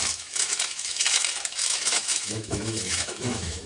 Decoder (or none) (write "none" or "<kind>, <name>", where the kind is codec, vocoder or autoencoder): autoencoder, DAC-VAE